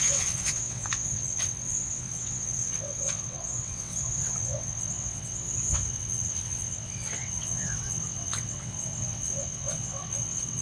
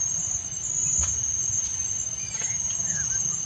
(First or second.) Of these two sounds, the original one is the second